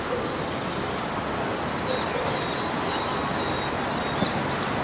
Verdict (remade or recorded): recorded